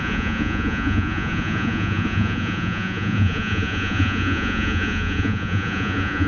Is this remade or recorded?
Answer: remade